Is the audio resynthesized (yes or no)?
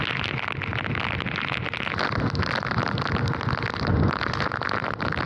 no